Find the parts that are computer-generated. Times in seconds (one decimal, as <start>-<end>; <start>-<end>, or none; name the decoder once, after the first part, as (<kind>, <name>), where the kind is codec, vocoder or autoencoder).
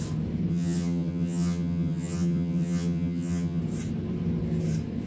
0.5-3.6 (vocoder, HiFi-GAN)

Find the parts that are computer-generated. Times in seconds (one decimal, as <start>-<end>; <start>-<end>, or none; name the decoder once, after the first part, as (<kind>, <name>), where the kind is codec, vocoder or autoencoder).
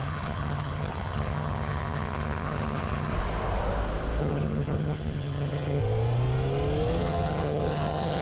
0.0-3.1 (vocoder, HiFi-GAN); 4.2-5.8; 7.0-8.2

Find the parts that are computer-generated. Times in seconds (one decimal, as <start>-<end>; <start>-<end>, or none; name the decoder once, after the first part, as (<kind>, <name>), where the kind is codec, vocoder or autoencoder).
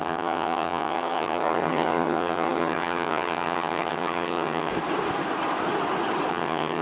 0.0-4.7 (vocoder, HiFi-GAN); 6.3-6.8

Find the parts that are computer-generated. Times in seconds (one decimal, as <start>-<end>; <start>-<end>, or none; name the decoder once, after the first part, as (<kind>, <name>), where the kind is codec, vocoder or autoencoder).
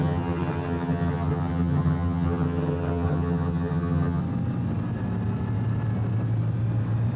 0.0-4.2 (vocoder, HiFi-GAN)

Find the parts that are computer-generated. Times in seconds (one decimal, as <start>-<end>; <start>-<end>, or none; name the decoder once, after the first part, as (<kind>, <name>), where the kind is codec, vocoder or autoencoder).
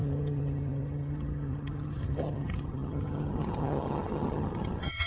0.0-5.1 (vocoder, HiFi-GAN)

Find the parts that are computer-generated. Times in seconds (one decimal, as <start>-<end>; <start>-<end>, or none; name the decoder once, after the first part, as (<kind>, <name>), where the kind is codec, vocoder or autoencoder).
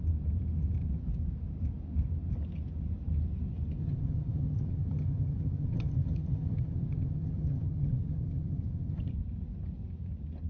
3.8-9.1 (vocoder, HiFi-GAN)